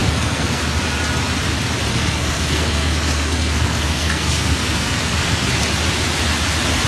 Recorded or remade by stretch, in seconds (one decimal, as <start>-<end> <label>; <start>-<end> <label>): 0.0-0.6 remade; 0.6-1.9 recorded; 1.9-5.5 remade; 5.5-6.9 recorded